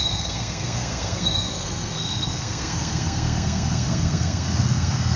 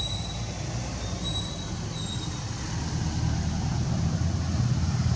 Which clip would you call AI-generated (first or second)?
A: first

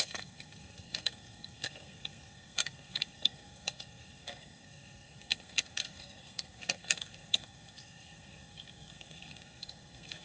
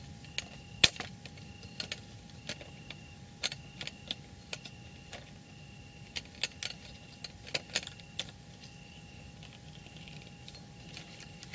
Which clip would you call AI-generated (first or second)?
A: first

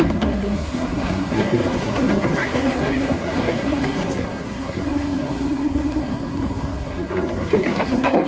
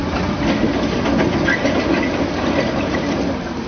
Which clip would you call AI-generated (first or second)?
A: first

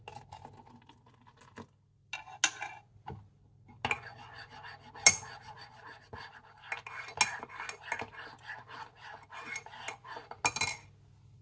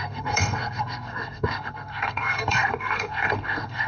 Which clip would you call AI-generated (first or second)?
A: second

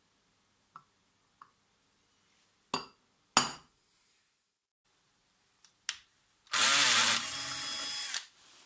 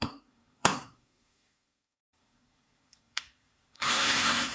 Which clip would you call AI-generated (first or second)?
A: second